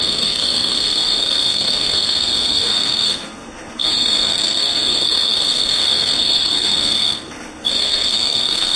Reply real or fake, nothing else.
fake